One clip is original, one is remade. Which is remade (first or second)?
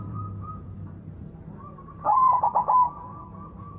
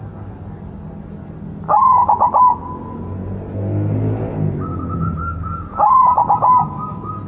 first